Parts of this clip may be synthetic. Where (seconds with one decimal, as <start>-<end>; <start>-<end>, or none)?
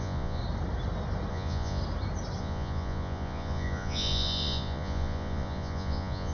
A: 0.0-0.4; 1.3-1.8; 2.4-6.3